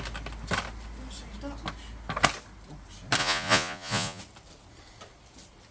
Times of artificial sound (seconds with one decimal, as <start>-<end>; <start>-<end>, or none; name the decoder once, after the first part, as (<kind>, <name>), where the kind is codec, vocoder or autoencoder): 3.2-4.2 (vocoder, Vocos)